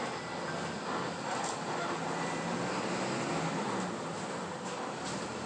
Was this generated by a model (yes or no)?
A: no